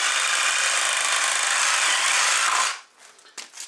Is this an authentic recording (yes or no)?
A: yes